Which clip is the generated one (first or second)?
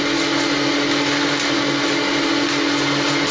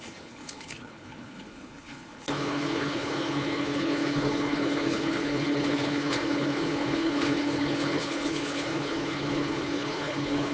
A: second